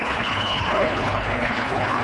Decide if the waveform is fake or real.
fake